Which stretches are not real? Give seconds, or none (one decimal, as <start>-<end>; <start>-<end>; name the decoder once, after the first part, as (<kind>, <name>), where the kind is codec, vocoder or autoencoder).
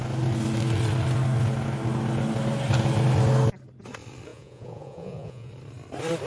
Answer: 4.3-5.5 (vocoder, Vocos)